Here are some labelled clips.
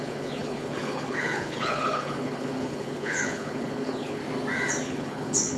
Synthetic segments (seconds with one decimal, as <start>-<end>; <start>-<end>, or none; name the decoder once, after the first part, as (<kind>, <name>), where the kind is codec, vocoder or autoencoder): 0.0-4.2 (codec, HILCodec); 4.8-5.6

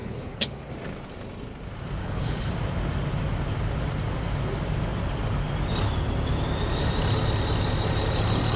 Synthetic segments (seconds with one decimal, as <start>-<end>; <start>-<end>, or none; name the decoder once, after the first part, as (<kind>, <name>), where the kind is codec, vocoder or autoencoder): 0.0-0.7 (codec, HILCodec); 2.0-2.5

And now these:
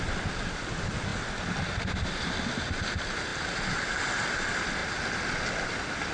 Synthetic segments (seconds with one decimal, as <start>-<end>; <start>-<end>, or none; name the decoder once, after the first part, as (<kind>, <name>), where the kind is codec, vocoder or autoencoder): none